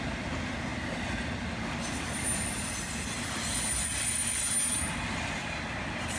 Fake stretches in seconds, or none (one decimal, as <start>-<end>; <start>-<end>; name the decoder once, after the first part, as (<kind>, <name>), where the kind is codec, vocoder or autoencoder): none